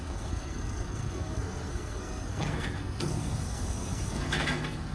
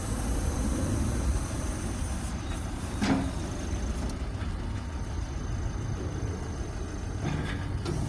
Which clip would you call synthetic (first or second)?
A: first